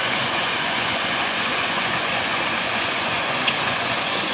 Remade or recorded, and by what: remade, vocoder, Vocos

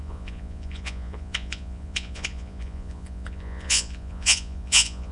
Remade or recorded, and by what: remade, vocoder, Vocos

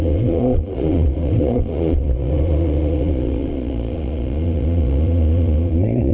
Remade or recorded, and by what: remade, vocoder, Vocos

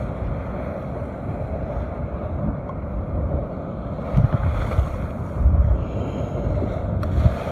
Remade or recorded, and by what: recorded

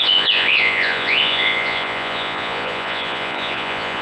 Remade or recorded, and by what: remade, vocoder, Vocos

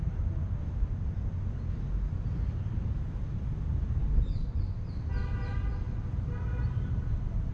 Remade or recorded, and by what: recorded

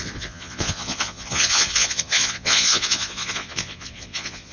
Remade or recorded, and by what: remade, vocoder, Vocos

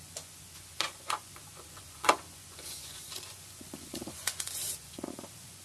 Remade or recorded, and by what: remade, vocoder, Vocos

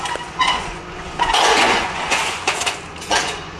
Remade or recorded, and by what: remade, vocoder, Vocos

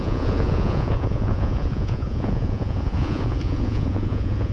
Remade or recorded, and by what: remade, vocoder, Vocos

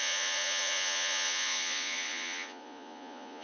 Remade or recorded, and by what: remade, vocoder, Vocos